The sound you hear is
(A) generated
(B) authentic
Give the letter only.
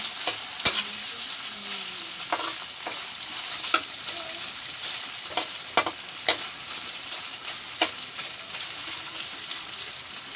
B